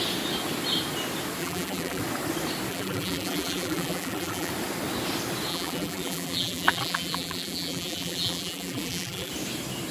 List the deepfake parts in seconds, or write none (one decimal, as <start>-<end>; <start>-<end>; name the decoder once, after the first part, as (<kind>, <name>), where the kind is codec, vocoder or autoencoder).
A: 1.4-2.0 (vocoder, BigVGAN v2); 2.7-4.5; 5.5-9.3